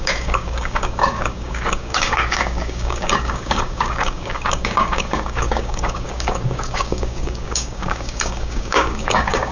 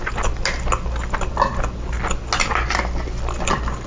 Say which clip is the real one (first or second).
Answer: second